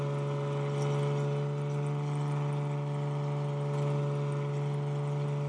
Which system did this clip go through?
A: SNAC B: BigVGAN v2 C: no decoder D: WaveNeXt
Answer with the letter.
C